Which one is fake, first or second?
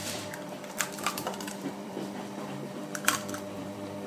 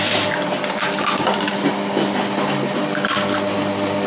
first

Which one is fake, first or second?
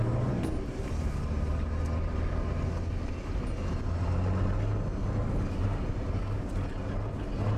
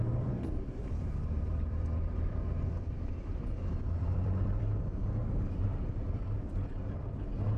second